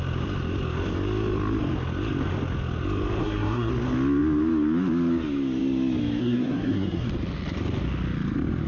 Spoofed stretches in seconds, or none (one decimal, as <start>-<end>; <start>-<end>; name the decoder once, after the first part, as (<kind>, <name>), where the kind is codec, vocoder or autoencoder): 3.2-3.7 (codec, SNAC); 6.2-7.1